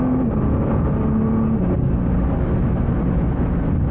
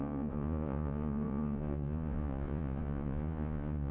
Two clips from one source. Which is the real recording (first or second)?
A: first